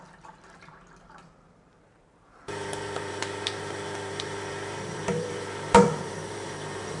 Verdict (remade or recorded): remade